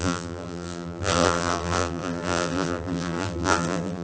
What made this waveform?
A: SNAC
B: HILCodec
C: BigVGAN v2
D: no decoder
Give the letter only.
C